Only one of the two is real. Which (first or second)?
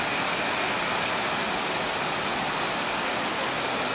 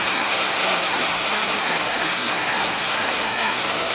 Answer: first